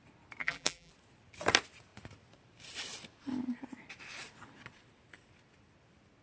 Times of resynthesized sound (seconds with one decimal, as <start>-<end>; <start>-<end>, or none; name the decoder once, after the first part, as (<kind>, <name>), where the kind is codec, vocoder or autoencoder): 0.4-0.9 (vocoder, BigVGAN v2)